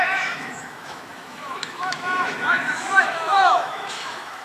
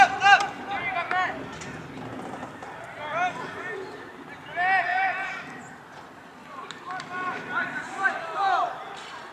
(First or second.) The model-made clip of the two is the first